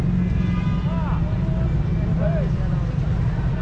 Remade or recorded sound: recorded